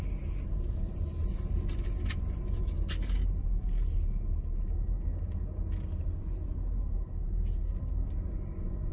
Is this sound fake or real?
real